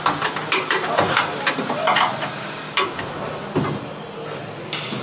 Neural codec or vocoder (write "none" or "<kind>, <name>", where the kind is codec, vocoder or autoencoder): none